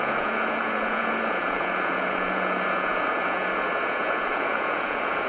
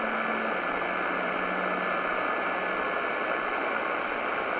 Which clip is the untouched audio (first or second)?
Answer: second